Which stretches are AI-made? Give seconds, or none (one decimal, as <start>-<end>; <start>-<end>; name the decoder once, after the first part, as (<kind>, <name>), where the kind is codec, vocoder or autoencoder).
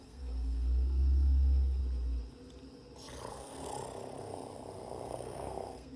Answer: 0.0-1.8 (codec, SNAC); 3.3-3.7; 4.2-6.0